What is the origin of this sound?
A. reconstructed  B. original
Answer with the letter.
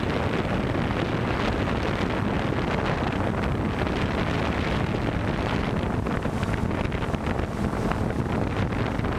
B